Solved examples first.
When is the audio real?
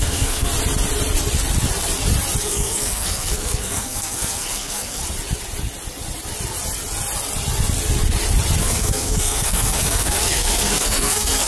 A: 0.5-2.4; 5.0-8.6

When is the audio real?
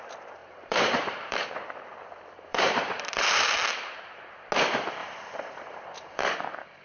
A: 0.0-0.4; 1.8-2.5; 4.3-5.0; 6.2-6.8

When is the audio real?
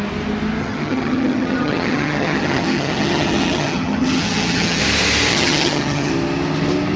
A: 0.0-0.6; 4.8-5.3; 6.1-7.0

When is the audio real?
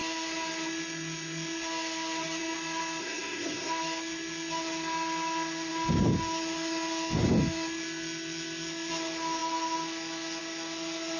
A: 0.0-3.0; 3.7-11.2